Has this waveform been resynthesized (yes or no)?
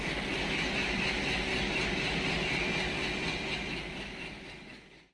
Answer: no